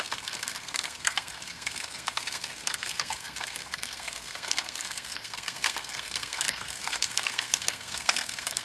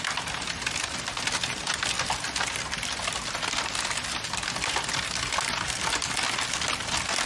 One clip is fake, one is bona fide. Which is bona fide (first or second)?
second